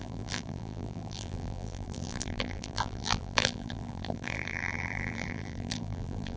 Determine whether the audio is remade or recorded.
remade